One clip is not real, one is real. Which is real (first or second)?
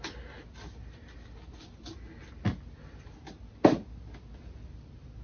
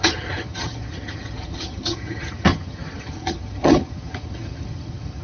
first